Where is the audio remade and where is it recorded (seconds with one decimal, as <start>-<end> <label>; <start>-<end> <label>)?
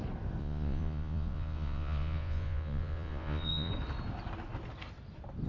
0.0-0.4 recorded; 0.4-3.7 remade; 3.7-5.5 recorded